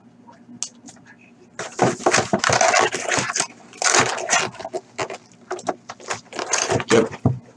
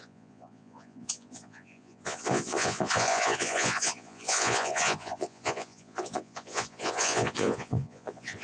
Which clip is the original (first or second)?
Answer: first